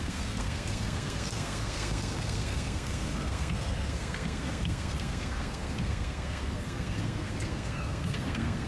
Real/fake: fake